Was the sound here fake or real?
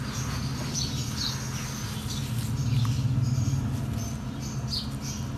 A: real